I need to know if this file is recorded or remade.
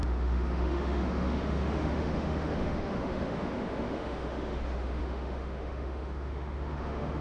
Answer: remade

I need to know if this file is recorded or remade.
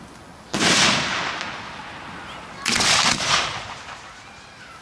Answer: recorded